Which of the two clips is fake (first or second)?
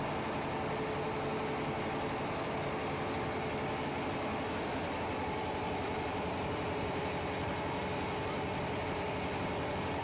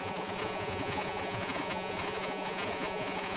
second